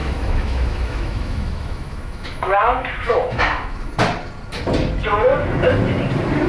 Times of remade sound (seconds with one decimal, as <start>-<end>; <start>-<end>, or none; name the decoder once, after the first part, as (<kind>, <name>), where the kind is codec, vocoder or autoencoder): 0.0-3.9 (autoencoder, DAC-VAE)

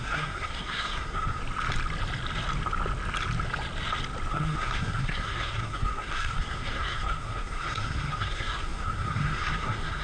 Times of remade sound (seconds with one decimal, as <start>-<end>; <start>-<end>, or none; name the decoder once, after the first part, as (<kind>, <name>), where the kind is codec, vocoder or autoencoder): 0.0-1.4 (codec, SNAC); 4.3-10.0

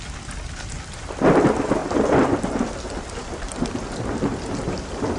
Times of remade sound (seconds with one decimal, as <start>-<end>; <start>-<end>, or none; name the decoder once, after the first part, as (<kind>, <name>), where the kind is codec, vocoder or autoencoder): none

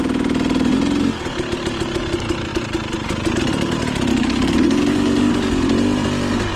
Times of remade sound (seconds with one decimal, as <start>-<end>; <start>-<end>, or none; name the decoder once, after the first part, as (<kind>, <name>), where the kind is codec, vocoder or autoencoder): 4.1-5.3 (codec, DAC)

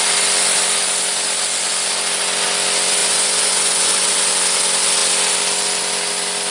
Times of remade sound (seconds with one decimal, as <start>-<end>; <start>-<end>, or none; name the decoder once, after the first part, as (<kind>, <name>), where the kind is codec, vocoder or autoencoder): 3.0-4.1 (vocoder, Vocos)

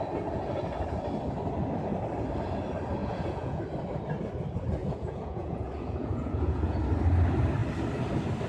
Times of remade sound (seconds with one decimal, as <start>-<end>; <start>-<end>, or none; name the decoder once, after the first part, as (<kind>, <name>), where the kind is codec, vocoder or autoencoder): 3.0-3.6 (vocoder, Vocos); 4.8-6.8

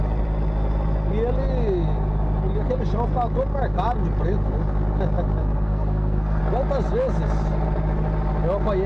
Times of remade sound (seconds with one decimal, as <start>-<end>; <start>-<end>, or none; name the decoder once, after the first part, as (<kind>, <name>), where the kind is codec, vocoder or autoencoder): 5.4-6.4 (codec, SNAC)

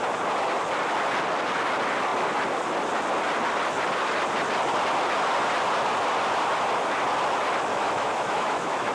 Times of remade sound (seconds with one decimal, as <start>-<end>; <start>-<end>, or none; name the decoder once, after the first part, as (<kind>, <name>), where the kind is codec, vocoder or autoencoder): 7.7-8.9 (autoencoder, DAC-VAE)